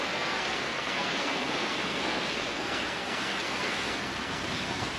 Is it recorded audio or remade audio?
remade